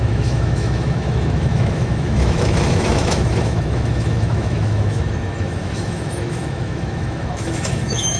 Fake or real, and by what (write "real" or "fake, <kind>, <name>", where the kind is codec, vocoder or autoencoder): fake, autoencoder, DAC-VAE